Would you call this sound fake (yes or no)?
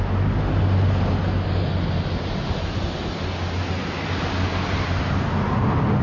no